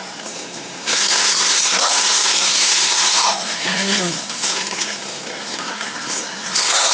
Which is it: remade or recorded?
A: remade